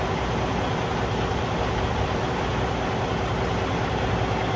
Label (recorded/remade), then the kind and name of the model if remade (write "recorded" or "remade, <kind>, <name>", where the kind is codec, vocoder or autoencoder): recorded